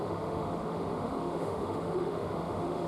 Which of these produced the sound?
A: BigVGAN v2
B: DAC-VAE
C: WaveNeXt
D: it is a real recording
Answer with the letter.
B